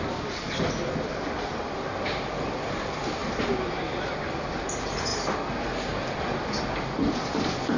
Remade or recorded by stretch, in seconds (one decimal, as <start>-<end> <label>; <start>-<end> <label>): 0.0-7.8 recorded